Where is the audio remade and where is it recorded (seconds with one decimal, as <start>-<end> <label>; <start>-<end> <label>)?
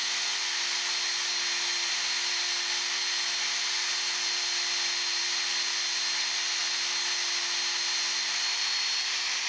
0.0-9.5 recorded